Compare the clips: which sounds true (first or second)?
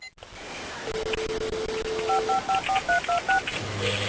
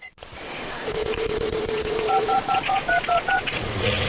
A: first